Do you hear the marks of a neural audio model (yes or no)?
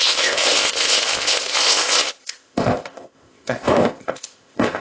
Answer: yes